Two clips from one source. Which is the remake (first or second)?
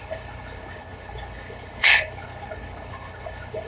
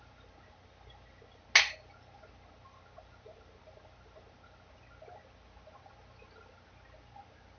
first